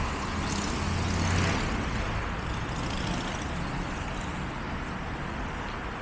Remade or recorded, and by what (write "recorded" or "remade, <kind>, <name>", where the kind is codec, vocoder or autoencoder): recorded